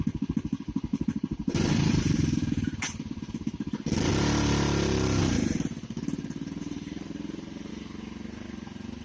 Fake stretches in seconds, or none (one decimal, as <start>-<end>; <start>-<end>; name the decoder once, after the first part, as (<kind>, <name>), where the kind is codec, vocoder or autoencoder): 0.9-4.1 (vocoder, BigVGAN v2); 5.2-7.7